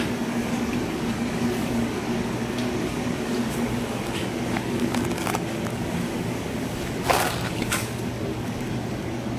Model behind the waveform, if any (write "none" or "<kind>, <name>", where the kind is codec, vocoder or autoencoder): codec, DAC